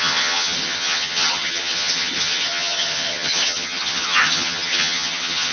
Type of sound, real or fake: fake